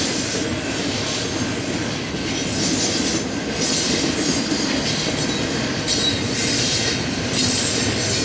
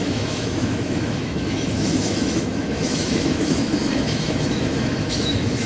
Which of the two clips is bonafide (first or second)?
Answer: first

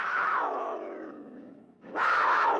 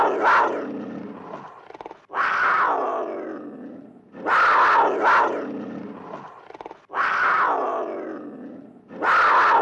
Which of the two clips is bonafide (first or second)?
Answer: second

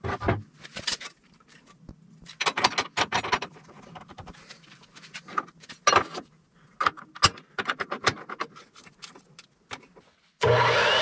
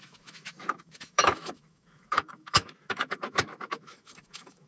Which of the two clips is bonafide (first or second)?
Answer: first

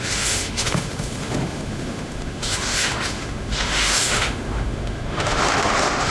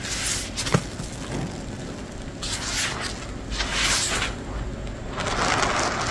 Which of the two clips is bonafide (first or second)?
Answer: second